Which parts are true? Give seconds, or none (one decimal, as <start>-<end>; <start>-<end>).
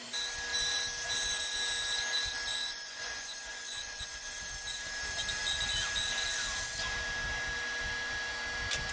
0.0-2.6; 4.4-8.9